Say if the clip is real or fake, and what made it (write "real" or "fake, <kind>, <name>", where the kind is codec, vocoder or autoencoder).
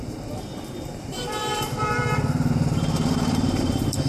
fake, vocoder, BigVGAN v2